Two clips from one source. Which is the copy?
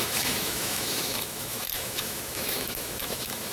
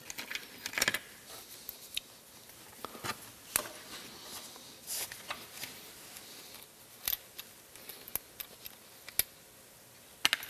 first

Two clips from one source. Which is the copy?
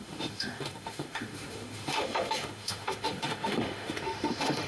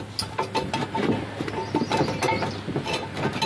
first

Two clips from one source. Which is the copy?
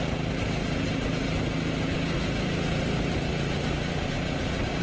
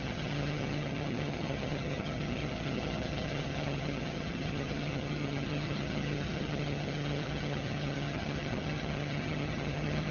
second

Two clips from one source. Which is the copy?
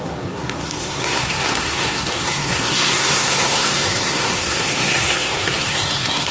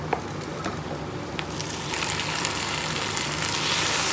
first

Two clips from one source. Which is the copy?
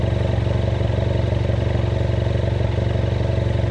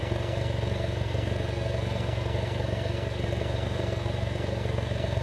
second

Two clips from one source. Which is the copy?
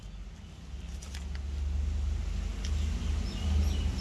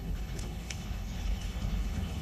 second